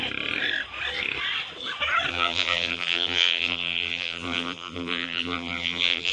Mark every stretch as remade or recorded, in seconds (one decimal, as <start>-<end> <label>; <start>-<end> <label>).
0.0-2.1 recorded; 2.1-6.1 remade